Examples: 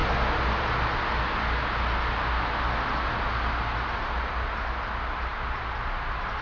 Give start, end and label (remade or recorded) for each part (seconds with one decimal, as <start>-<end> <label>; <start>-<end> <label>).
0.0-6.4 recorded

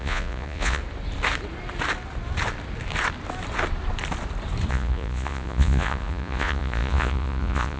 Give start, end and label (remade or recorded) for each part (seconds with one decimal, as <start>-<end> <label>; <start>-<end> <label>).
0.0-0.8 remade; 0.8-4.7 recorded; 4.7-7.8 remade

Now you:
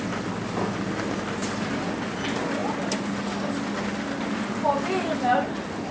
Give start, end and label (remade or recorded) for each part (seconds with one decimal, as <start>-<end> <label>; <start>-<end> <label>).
0.0-5.9 recorded